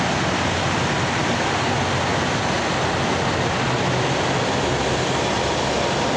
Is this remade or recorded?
recorded